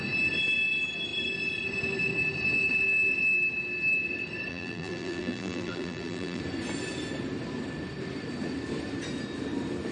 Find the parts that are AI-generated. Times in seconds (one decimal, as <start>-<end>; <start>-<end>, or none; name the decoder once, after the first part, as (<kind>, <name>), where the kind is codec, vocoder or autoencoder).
4.5-6.4 (vocoder, BigVGAN v2)